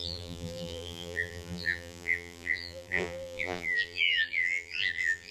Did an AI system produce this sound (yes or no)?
yes